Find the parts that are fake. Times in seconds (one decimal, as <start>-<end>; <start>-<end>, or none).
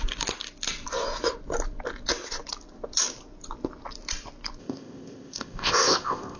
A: 4.6-6.4